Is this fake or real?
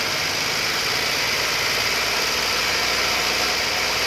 real